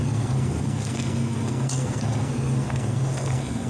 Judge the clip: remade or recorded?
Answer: remade